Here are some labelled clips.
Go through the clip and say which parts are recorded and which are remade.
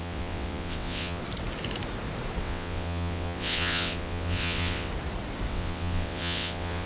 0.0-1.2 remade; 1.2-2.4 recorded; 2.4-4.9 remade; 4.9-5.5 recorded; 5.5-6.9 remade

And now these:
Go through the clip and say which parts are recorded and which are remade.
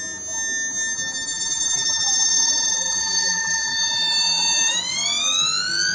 0.0-1.3 recorded; 1.3-4.8 remade; 4.8-5.9 recorded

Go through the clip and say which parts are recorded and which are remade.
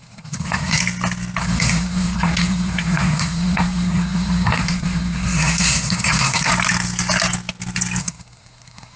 0.0-0.8 remade; 0.8-1.4 recorded; 1.4-6.5 remade; 6.5-8.0 recorded; 8.0-9.0 remade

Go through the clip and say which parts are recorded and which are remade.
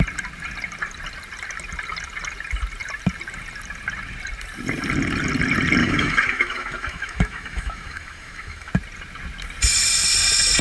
0.0-5.8 recorded; 5.8-8.7 remade; 8.7-10.6 recorded